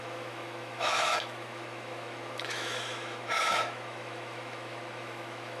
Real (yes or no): no